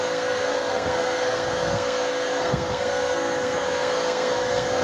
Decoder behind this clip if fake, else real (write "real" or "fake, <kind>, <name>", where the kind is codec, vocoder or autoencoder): fake, codec, SNAC